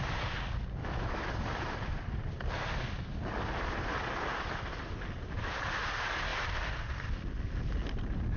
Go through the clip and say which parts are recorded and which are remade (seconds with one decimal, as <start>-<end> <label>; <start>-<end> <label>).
0.0-0.8 recorded; 0.8-1.3 remade; 1.3-8.4 recorded